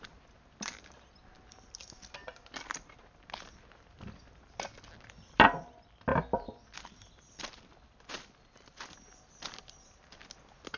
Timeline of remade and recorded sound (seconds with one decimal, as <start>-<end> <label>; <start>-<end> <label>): 0.0-10.8 recorded